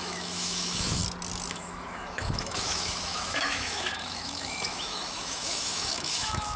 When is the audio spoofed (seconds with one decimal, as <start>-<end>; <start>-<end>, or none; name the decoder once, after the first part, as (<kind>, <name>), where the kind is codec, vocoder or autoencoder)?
0.0-1.0 (autoencoder, DAC-VAE); 1.5-6.6